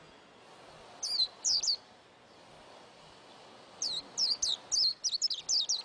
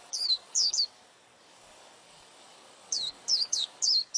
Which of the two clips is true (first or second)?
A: first